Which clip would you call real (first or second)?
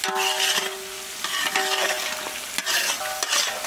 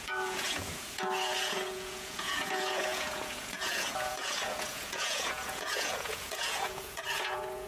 first